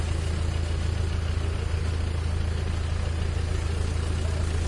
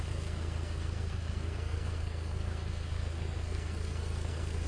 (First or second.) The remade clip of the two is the second